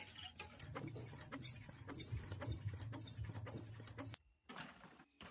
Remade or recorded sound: recorded